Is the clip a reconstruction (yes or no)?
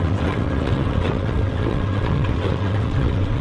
yes